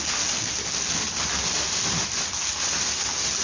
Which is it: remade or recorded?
recorded